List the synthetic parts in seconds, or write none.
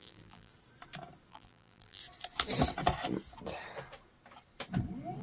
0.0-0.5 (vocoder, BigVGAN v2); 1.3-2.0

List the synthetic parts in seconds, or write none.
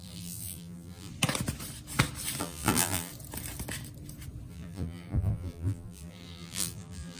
0.0-1.1 (vocoder, BigVGAN v2); 2.4-3.1; 4.5-7.2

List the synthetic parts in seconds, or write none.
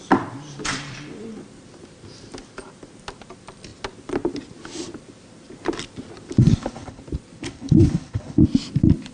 6.4-7.0 (codec, HILCodec); 7.4-8.4